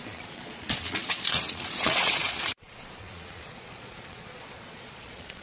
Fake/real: fake